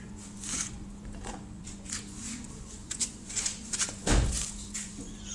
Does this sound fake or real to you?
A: fake